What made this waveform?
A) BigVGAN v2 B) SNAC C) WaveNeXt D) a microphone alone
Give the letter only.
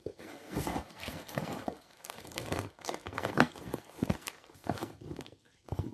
B